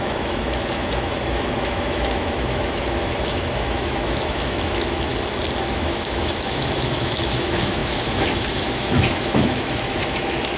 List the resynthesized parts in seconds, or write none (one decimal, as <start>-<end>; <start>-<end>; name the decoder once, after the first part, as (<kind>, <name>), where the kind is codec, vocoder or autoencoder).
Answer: 0.0-5.1 (autoencoder, DAC-VAE); 5.7-10.6